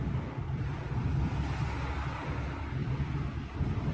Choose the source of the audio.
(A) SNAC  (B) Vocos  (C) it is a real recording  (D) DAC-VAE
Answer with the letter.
C